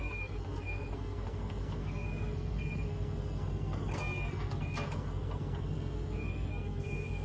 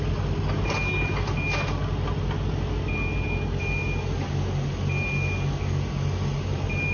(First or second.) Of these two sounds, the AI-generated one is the first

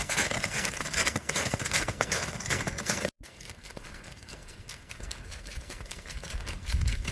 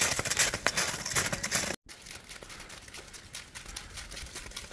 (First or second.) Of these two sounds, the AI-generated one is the first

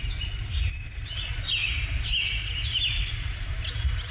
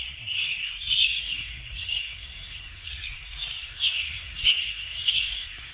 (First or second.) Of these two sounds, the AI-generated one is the second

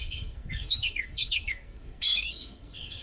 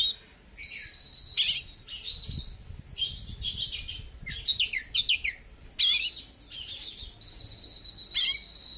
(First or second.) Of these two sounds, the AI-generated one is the first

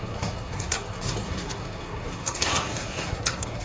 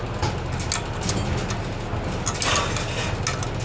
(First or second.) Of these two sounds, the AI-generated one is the first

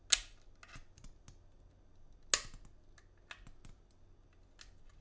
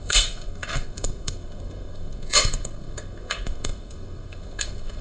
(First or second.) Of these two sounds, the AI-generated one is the second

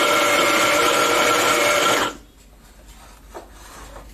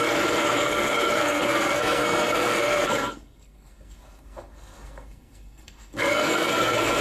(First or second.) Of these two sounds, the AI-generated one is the second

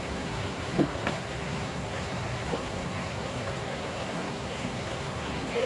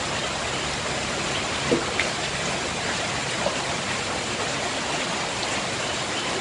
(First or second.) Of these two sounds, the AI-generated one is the first